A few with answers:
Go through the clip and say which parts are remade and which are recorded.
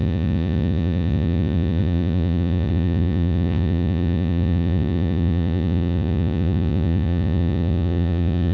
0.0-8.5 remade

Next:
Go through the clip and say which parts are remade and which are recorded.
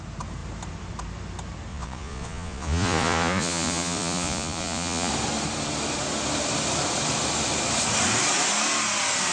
0.0-1.7 recorded; 1.7-5.1 remade; 5.1-9.3 recorded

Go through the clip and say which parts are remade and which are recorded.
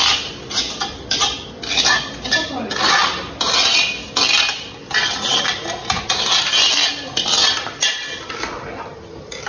0.0-9.5 recorded